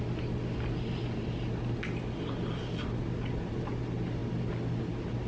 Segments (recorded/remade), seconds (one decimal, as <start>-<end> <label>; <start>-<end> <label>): 0.0-5.3 recorded